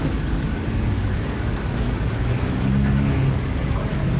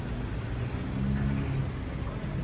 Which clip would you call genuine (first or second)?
second